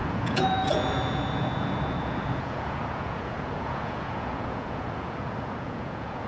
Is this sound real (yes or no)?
no